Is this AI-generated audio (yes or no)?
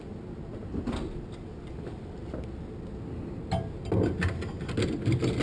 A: no